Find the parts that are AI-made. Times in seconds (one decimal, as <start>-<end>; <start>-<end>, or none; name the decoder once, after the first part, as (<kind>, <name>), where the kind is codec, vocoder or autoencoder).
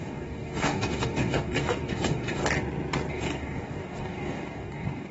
0.0-2.4 (codec, DAC); 3.1-5.1